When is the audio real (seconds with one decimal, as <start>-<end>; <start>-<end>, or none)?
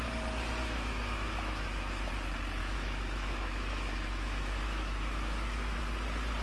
0.0-0.6; 2.1-2.6; 5.8-6.4